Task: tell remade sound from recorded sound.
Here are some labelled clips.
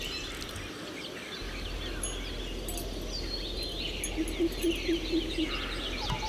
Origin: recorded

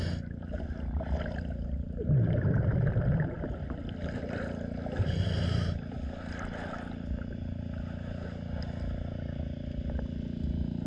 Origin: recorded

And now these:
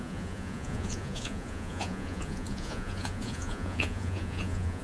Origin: remade